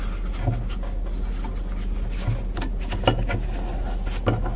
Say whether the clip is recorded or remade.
recorded